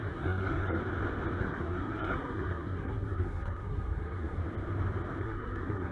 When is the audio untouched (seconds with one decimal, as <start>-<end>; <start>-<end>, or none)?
0.8-1.4; 4.4-5.2